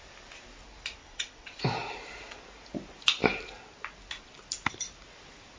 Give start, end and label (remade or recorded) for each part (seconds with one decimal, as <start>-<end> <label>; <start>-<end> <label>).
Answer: 0.0-1.0 recorded; 1.0-1.6 remade; 1.6-5.6 recorded